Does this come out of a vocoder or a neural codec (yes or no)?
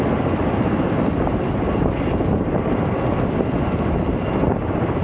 no